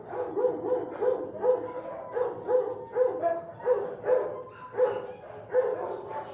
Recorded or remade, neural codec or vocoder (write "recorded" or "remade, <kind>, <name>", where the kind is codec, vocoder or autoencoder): recorded